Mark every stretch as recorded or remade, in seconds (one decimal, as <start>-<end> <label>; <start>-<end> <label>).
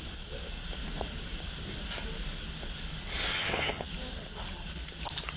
0.0-3.3 recorded; 3.3-3.9 remade; 3.9-5.4 recorded